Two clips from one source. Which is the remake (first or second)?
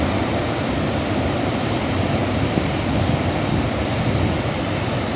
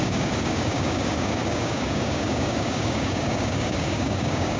second